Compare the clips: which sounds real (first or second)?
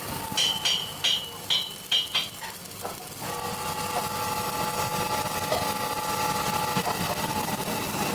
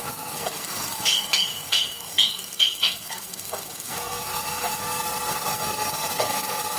first